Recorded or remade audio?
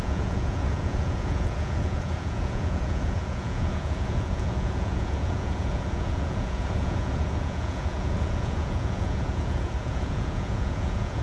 remade